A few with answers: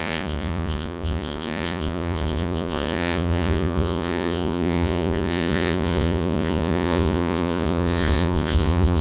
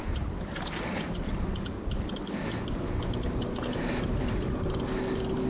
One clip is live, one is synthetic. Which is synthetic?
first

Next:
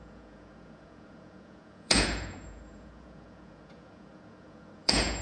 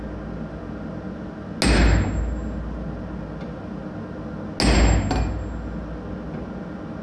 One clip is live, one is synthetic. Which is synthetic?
first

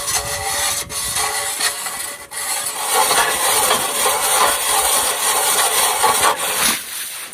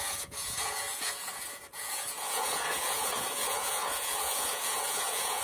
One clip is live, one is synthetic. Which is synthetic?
second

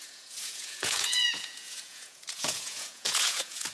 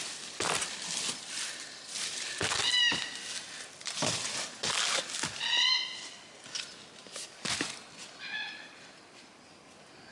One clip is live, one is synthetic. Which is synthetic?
first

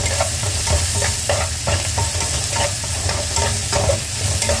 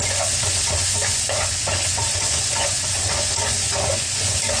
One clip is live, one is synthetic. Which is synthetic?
second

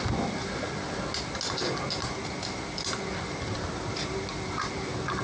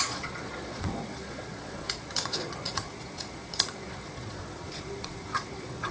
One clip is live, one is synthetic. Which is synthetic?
second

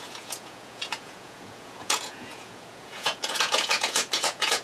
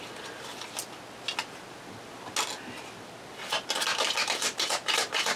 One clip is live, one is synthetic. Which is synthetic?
first